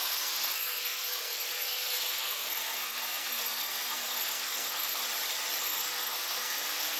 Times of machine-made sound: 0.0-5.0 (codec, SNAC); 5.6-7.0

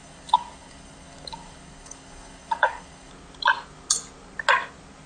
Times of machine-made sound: 0.0-3.1 (codec, DAC)

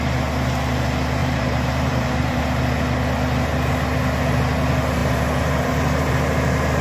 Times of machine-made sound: 1.2-2.4 (vocoder, BigVGAN v2); 5.0-6.1

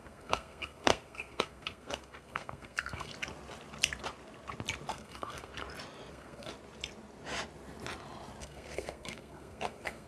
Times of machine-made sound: 0.0-3.1 (codec, SNAC); 4.9-5.5; 6.1-6.5; 8.4-10.1

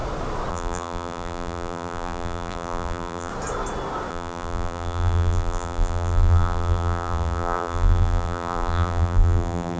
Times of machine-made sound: 0.5-3.3 (vocoder, BigVGAN v2); 4.1-9.8

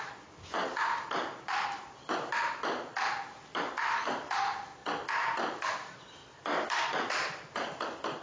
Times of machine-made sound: 0.0-0.5 (vocoder, BigVGAN v2); 4.1-4.8; 5.7-8.2

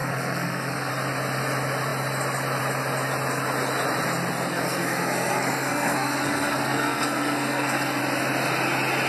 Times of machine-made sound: 0.0-0.9 (codec, SNAC); 4.5-8.0